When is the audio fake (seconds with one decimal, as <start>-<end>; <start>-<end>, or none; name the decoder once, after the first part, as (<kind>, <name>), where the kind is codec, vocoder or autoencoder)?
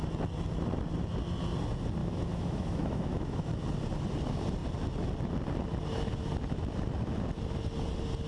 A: 2.0-3.4 (autoencoder, DAC-VAE)